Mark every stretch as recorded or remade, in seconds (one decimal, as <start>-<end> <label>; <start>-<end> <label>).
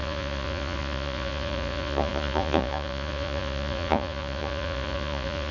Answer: 0.0-5.5 remade